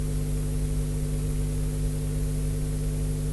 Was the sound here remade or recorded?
recorded